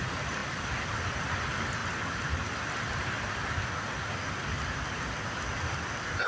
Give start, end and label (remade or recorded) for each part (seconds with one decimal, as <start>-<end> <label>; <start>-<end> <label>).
0.0-6.3 recorded